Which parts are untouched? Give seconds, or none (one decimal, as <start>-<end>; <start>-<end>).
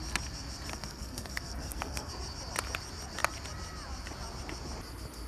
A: 0.0-0.7; 2.1-5.3